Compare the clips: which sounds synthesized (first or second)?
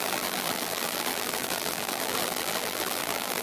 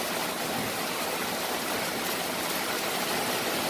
first